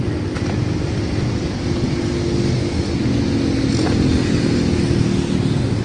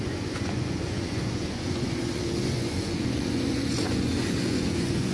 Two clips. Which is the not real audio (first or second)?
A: second